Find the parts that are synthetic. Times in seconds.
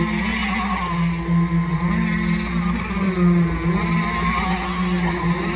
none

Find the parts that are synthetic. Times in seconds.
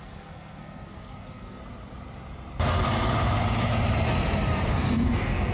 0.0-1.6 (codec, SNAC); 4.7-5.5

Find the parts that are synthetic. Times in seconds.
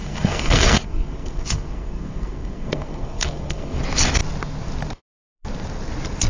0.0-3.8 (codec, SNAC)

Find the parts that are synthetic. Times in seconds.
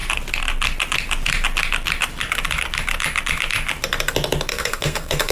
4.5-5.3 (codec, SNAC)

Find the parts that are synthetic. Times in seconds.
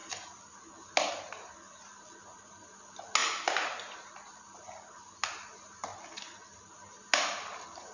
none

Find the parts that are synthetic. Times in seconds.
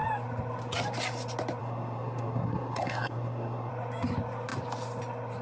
1.6-3.7 (codec, SNAC)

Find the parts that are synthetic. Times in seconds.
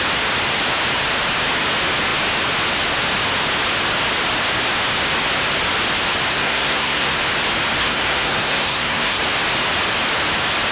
6.3-7.2 (codec, SNAC); 7.8-9.2